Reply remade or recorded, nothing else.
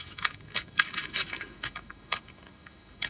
remade